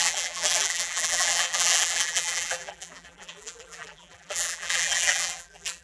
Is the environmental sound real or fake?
fake